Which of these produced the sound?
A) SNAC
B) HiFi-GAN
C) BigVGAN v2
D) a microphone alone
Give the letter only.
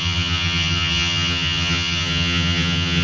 B